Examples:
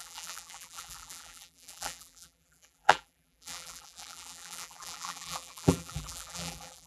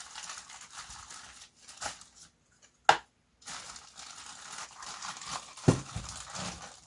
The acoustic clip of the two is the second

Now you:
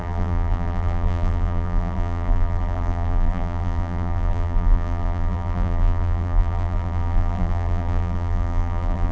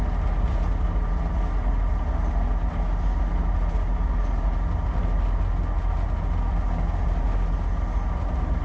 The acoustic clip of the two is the second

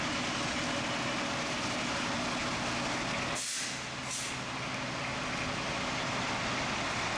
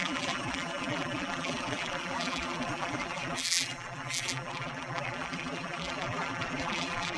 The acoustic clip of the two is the first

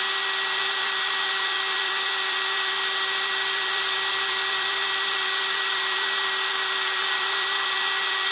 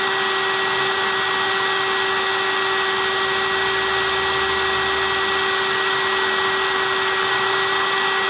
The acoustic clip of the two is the second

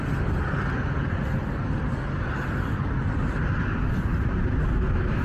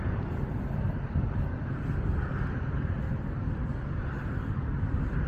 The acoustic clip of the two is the first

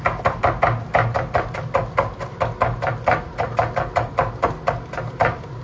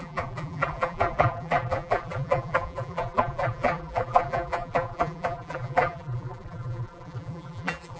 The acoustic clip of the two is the first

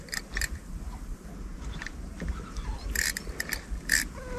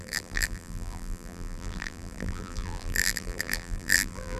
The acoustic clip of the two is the first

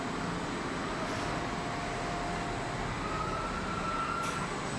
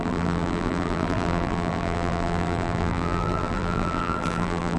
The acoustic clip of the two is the first